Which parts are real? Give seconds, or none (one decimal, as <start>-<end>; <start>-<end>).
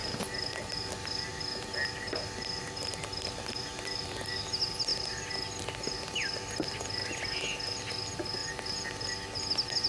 0.0-9.9